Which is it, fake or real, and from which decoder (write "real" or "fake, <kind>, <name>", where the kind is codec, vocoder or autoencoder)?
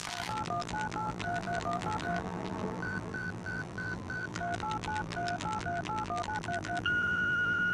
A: fake, vocoder, BigVGAN v2